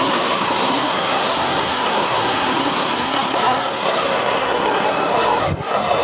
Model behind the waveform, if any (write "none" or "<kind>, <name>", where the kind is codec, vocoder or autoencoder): codec, SNAC